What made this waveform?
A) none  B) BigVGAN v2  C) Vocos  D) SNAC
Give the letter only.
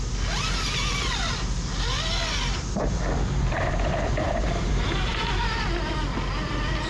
B